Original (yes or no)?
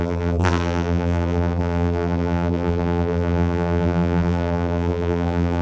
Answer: no